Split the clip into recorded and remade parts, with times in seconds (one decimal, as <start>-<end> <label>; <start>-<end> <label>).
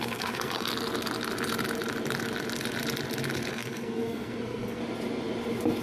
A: 0.0-0.7 remade; 0.7-3.5 recorded; 3.5-4.8 remade; 4.8-5.8 recorded